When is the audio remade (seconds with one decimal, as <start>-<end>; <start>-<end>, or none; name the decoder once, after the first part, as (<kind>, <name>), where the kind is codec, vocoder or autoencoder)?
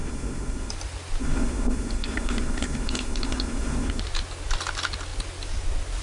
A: 0.0-0.7 (codec, SNAC); 1.2-4.0